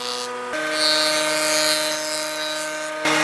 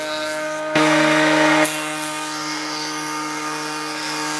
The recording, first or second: first